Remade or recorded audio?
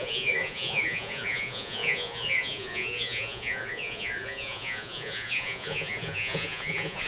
remade